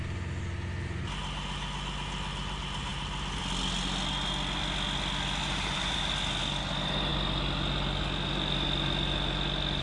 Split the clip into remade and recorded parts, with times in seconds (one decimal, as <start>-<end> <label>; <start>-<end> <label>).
0.0-5.4 recorded; 5.4-6.0 remade; 6.0-9.8 recorded